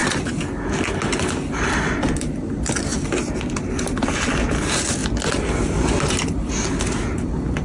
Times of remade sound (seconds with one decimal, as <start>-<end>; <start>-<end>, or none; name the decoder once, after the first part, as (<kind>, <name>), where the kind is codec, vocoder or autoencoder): none